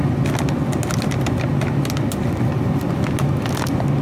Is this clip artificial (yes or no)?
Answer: no